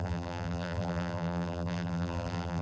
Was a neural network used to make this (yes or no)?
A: yes